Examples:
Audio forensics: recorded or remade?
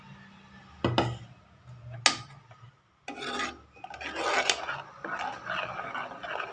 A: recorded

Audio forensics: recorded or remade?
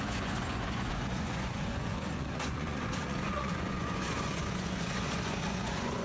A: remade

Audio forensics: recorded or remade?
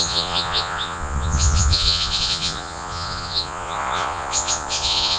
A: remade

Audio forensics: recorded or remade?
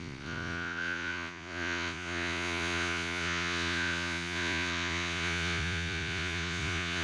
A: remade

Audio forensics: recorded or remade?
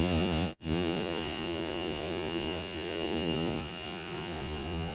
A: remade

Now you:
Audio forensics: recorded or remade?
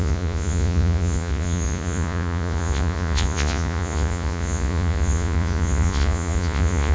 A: remade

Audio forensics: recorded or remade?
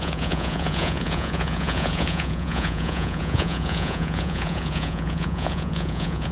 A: remade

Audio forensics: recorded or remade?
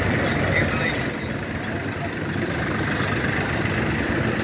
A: recorded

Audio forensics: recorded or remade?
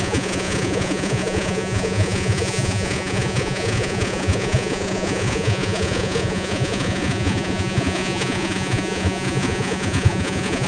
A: remade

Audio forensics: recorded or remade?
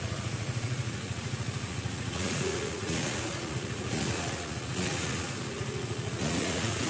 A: remade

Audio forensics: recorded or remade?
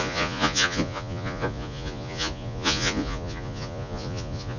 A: remade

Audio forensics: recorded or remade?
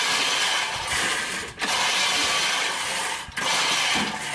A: recorded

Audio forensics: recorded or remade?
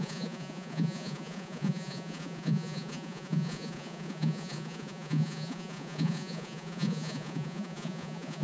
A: remade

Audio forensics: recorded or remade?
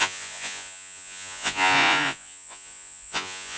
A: remade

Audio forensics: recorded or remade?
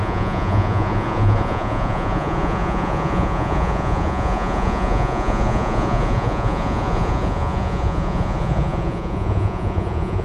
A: remade